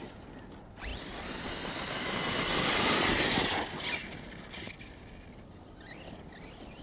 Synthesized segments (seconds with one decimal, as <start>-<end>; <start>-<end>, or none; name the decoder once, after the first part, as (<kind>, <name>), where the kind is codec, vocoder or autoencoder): none